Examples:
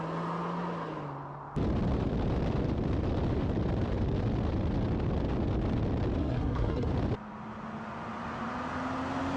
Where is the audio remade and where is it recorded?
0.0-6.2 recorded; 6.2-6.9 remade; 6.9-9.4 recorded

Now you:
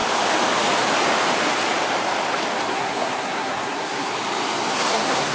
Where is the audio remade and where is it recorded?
0.0-2.7 recorded; 2.7-4.1 remade; 4.1-4.7 recorded; 4.7-5.3 remade

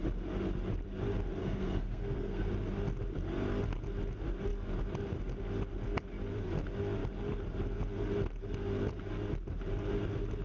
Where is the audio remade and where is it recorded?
0.0-1.4 recorded; 1.4-2.5 remade; 2.5-10.4 recorded

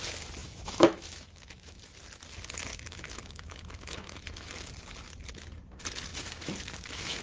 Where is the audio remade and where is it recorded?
0.0-0.4 recorded; 0.4-1.8 remade; 1.8-2.7 recorded; 2.7-4.7 remade; 4.7-6.1 recorded; 6.1-7.2 remade

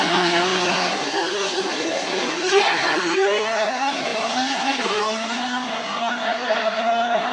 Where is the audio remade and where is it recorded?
0.0-7.3 remade